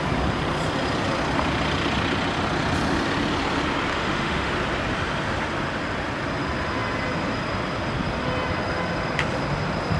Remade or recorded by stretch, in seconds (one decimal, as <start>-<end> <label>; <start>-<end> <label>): 0.0-3.9 recorded; 3.9-4.5 remade; 4.5-10.0 recorded